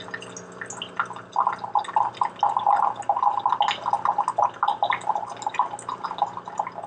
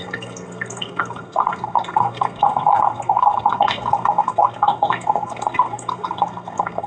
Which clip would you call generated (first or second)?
second